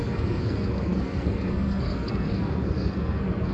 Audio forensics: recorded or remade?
remade